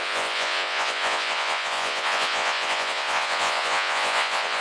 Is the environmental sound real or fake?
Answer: fake